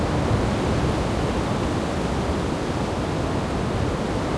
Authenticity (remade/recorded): recorded